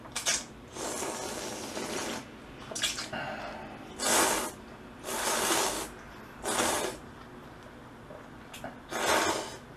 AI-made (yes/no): no